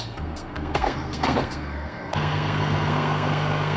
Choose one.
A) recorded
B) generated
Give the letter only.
B